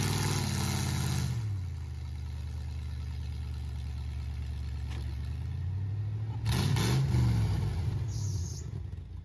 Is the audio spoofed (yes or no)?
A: no